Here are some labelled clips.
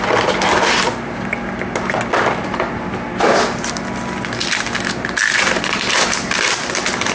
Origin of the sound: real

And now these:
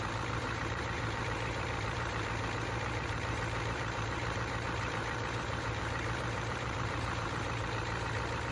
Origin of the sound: fake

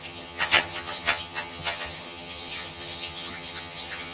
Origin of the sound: fake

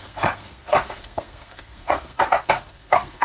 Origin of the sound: fake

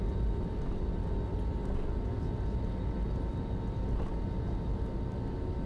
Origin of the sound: real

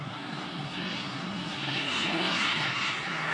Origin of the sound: fake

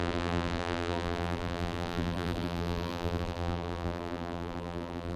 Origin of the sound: fake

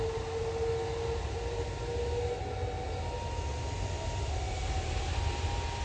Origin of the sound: real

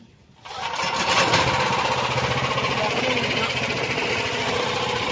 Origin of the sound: real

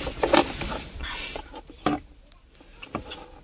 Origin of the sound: real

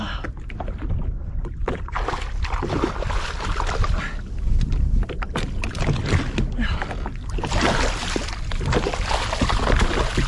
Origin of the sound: real